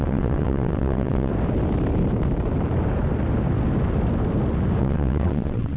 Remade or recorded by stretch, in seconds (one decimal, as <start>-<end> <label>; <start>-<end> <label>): 0.0-1.3 remade; 1.3-4.8 recorded; 4.8-5.8 remade